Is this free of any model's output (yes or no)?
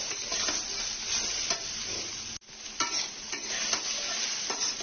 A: yes